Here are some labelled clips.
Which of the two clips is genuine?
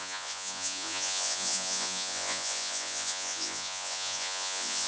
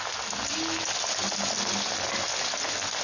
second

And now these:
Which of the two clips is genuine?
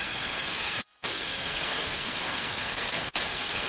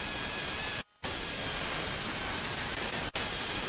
second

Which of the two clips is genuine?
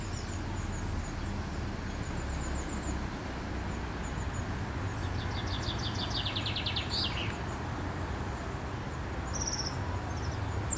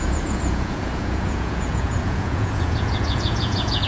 first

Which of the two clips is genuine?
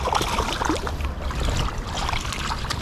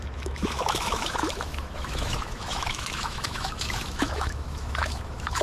first